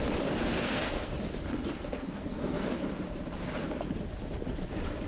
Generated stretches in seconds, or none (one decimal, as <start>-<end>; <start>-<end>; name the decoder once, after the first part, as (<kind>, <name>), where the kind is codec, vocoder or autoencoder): 0.6-1.1 (codec, SNAC); 1.5-2.7